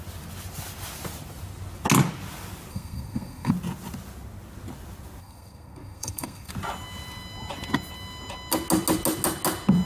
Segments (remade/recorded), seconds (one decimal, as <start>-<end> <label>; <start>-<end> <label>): 0.0-2.7 recorded; 2.7-3.5 remade; 3.5-5.2 recorded; 5.2-6.5 remade; 6.5-9.9 recorded

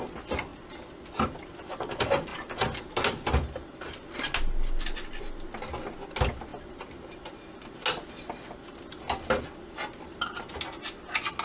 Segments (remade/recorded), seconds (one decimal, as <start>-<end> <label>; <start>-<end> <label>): 0.0-6.5 recorded; 6.5-7.6 remade; 7.6-11.4 recorded

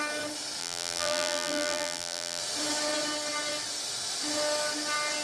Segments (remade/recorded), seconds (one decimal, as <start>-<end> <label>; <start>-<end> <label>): 0.0-0.6 recorded; 0.6-2.4 remade; 2.4-5.2 recorded